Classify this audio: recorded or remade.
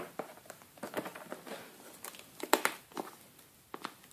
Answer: recorded